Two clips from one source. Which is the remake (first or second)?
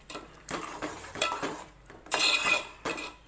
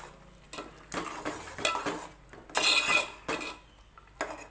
first